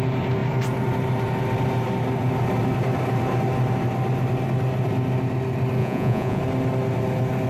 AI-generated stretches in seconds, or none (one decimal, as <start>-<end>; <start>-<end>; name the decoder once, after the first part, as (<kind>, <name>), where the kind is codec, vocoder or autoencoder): 5.8-6.4 (vocoder, Vocos)